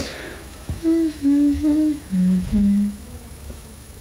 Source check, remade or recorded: remade